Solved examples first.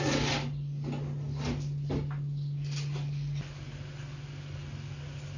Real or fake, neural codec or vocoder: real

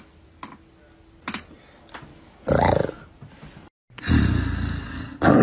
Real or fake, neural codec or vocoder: real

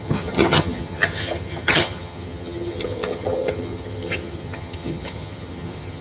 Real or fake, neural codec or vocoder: fake, vocoder, HiFi-GAN